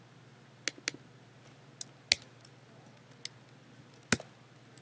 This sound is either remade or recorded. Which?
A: recorded